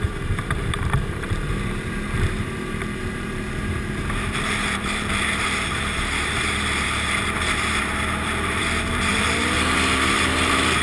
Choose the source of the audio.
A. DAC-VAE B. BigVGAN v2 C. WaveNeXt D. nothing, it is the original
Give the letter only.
B